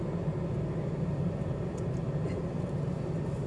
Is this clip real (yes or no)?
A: yes